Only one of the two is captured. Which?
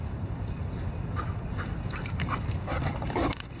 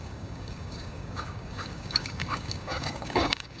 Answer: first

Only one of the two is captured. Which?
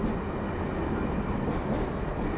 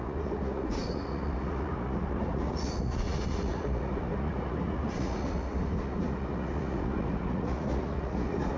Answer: first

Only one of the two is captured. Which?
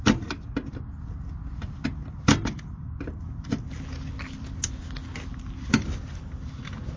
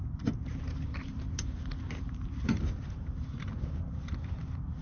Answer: first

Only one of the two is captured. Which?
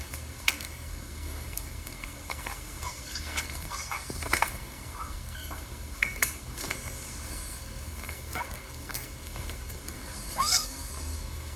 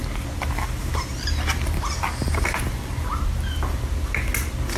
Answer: second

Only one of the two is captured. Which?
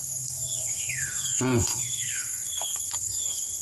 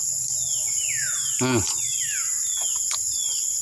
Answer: second